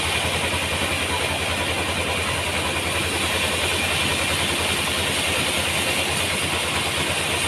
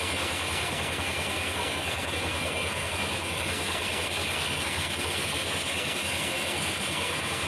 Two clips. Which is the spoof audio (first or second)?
second